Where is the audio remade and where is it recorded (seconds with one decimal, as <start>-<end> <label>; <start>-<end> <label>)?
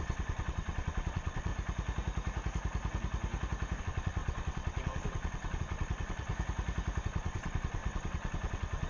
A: 0.0-1.5 remade; 1.5-3.8 recorded; 3.8-6.3 remade; 6.3-7.0 recorded; 7.0-8.9 remade